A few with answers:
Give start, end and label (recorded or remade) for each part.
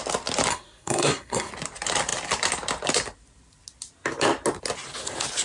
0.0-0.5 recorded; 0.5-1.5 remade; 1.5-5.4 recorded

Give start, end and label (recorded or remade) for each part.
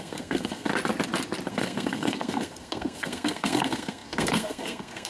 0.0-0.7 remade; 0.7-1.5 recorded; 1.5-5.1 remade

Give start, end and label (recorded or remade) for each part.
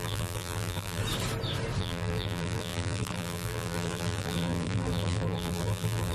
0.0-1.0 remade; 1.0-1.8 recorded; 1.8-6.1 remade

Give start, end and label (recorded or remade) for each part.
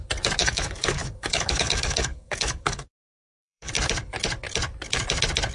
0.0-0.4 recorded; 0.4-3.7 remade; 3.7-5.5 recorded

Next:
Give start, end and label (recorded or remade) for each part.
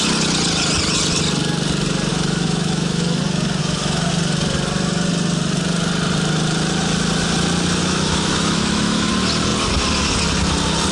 0.0-2.1 recorded; 2.1-3.2 remade; 3.2-3.6 recorded; 3.6-4.1 remade; 4.1-7.8 recorded; 7.8-9.1 remade; 9.1-10.9 recorded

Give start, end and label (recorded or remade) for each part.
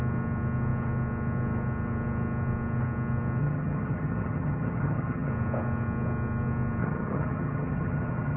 0.0-3.4 recorded; 3.4-5.3 remade; 5.3-6.8 recorded; 6.8-8.4 remade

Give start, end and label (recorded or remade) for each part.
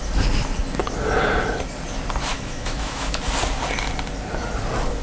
0.0-2.3 recorded; 2.3-3.2 remade; 3.2-5.0 recorded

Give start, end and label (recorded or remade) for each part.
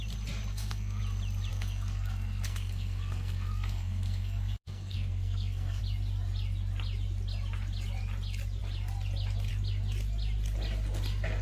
0.0-0.5 recorded; 0.5-1.0 remade; 1.0-1.5 recorded; 1.5-5.8 remade; 5.8-11.4 recorded